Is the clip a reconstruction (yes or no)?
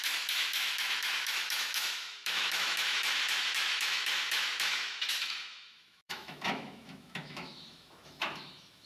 yes